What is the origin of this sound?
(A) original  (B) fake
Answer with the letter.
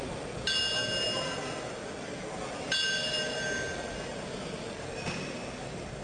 A